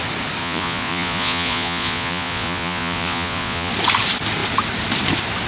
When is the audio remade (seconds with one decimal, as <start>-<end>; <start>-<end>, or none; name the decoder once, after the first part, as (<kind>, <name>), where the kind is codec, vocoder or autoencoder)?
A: 0.4-3.7 (vocoder, Vocos)